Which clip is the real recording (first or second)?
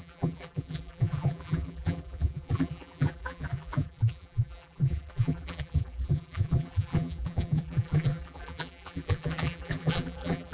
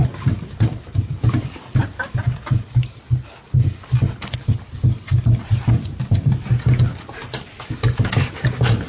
second